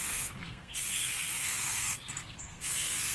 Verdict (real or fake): fake